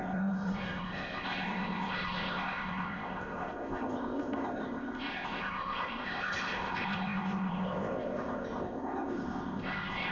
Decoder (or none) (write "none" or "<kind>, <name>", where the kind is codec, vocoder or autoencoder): codec, ZipCodec